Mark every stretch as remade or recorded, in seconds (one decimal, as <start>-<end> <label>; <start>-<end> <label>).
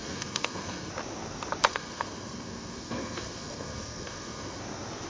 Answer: 0.0-0.9 remade; 0.9-1.7 recorded; 1.7-4.6 remade; 4.6-5.1 recorded